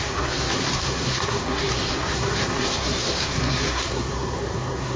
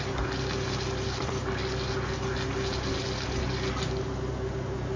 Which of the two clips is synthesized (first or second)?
first